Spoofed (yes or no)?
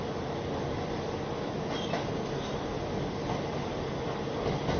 no